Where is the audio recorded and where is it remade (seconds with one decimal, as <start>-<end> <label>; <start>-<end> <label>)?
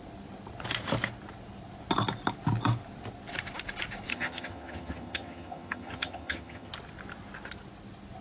0.0-4.1 recorded; 4.1-6.7 remade; 6.7-8.2 recorded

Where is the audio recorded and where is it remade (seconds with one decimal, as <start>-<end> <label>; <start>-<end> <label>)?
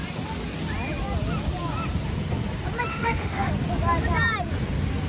0.0-2.9 recorded; 2.9-3.5 remade; 3.5-5.1 recorded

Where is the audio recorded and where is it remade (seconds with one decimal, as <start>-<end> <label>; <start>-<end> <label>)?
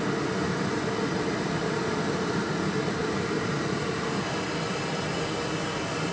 0.0-0.4 recorded; 0.4-3.8 remade; 3.8-6.1 recorded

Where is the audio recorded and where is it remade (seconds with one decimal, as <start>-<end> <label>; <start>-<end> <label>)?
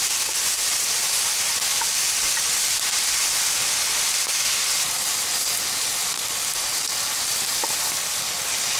0.0-1.7 recorded; 1.7-4.1 remade; 4.1-8.8 recorded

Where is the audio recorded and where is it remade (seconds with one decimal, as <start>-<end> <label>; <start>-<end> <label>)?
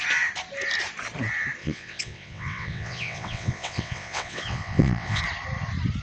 0.0-1.6 recorded; 1.6-5.2 remade; 5.2-6.0 recorded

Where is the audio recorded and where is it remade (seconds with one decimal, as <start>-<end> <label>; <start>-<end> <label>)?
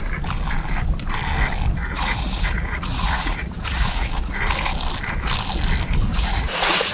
0.0-1.8 recorded; 1.8-4.3 remade; 4.3-6.1 recorded; 6.1-6.9 remade